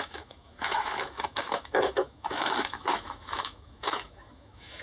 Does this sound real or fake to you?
fake